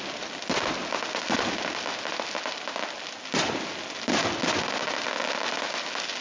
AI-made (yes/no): no